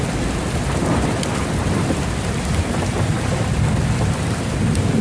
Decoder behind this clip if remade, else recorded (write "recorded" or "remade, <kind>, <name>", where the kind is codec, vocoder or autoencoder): remade, vocoder, BigVGAN v2